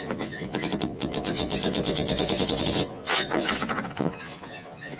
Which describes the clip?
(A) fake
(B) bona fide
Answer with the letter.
A